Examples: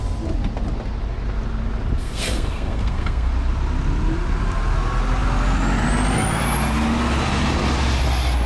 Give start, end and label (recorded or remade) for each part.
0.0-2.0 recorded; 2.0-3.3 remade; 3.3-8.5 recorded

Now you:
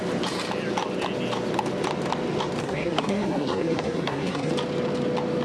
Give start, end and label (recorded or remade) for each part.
0.0-2.6 recorded; 2.6-4.5 remade; 4.5-5.4 recorded

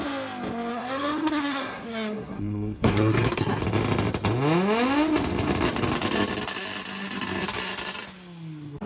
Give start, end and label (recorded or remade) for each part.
0.0-0.7 recorded; 0.7-3.6 remade; 3.6-8.9 recorded

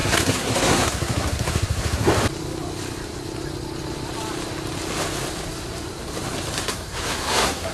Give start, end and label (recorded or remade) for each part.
0.0-2.1 remade; 2.1-6.7 recorded; 6.7-7.7 remade